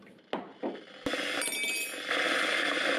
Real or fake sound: real